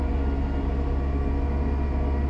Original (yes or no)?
yes